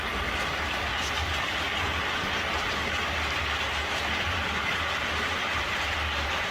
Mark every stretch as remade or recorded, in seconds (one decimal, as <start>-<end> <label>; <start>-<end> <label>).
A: 0.0-5.4 recorded; 5.4-6.5 remade